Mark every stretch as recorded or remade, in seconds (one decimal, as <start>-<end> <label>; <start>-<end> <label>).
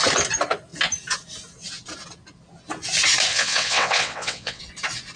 0.0-3.3 recorded; 3.3-4.6 remade; 4.6-5.2 recorded